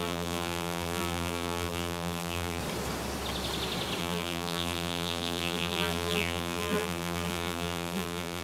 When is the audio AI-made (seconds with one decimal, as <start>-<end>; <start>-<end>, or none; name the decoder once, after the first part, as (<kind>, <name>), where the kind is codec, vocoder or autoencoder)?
0.0-2.6 (vocoder, BigVGAN v2); 4.0-8.4